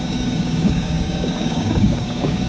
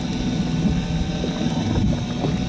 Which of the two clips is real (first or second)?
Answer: second